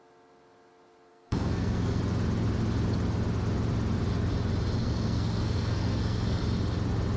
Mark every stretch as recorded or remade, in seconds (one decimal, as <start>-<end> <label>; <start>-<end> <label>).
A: 0.0-1.1 recorded; 1.1-2.0 remade; 2.0-4.8 recorded; 4.8-6.4 remade; 6.4-7.2 recorded